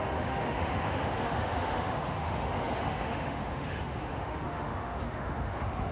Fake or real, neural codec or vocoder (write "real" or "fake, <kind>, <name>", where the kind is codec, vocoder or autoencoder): fake, autoencoder, DAC-VAE